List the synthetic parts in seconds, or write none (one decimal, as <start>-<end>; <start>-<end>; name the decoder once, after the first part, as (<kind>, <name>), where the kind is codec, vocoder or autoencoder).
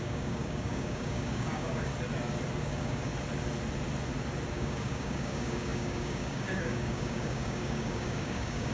0.0-1.9 (codec, DAC); 2.6-3.1; 4.5-8.7